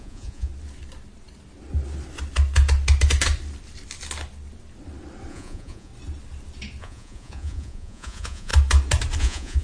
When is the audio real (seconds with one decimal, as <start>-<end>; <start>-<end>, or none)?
0.5-5.3; 5.9-6.8; 8.5-9.2